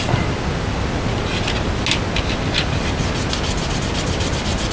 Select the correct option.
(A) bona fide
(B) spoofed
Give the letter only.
A